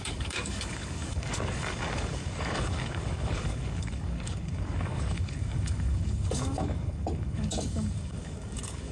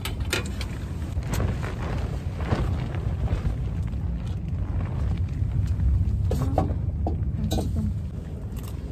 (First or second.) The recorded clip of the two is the second